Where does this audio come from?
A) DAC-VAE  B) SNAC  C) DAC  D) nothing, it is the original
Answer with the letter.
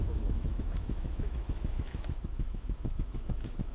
A